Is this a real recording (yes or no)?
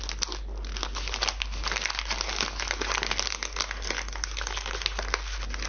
yes